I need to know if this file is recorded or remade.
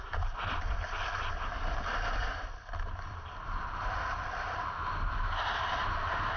recorded